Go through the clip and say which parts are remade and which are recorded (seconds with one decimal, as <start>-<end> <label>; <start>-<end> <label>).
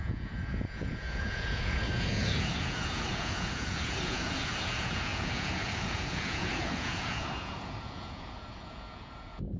0.0-9.6 remade